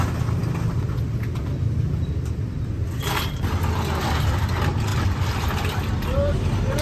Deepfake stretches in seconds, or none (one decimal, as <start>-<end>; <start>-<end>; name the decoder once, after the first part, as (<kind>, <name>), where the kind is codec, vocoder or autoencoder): 4.9-5.9 (vocoder, BigVGAN v2)